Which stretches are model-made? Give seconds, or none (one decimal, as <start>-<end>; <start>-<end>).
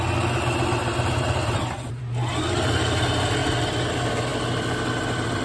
0.8-2.0